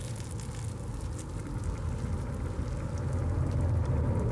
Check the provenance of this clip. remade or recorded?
recorded